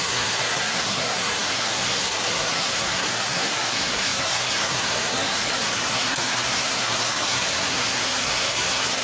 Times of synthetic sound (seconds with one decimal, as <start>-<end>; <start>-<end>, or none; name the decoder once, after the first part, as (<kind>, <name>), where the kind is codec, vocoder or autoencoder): 0.0-9.0 (codec, SNAC)